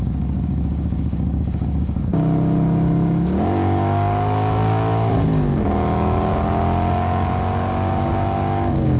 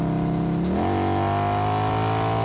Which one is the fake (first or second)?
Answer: first